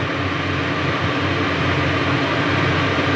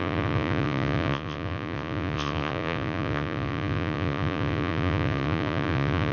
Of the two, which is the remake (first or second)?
second